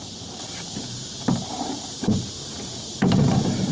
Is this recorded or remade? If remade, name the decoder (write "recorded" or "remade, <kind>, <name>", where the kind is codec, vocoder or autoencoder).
remade, vocoder, BigVGAN v2